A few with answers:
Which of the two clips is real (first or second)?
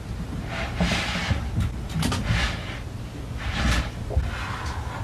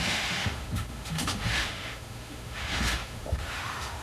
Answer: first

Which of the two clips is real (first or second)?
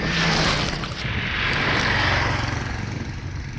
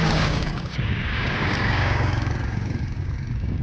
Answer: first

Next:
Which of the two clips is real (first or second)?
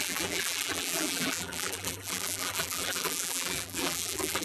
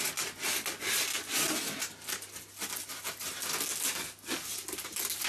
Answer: second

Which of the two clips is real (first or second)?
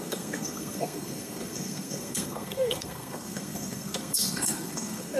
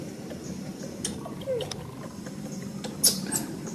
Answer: second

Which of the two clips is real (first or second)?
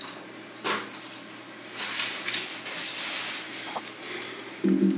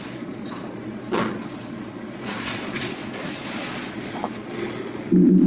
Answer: first